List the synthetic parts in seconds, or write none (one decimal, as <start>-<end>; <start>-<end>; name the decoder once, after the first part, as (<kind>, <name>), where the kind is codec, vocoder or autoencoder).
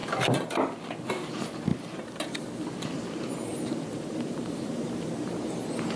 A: 1.7-2.4 (vocoder, BigVGAN v2); 3.5-5.3